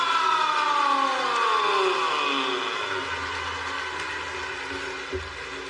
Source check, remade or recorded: recorded